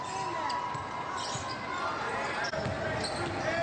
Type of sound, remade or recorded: recorded